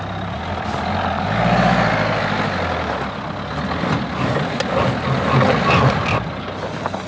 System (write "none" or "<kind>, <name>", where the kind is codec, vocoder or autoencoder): none